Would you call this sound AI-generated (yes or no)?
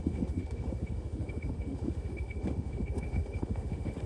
yes